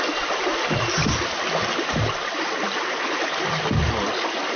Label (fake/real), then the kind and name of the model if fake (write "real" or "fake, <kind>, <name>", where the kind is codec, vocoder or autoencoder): real